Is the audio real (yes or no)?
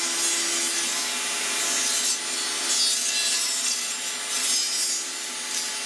yes